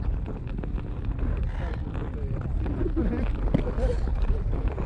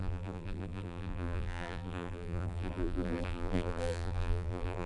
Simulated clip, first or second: second